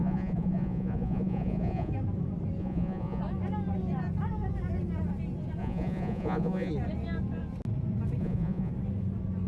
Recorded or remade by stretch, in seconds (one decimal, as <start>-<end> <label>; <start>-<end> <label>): 0.0-1.9 remade; 1.9-2.6 recorded; 2.6-3.2 remade; 3.2-5.6 recorded; 5.6-6.7 remade; 6.7-8.2 recorded; 8.2-8.7 remade; 8.7-9.5 recorded